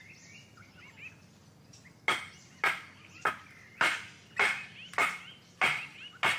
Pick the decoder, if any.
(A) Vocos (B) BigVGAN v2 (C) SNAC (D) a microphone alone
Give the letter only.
D